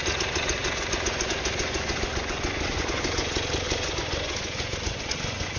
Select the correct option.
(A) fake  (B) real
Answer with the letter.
A